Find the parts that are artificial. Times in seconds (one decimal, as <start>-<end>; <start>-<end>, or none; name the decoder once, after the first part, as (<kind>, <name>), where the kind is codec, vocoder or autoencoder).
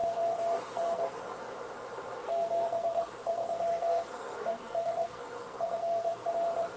0.0-1.2 (codec, SNAC); 2.2-6.3